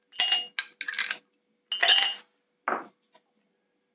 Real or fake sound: real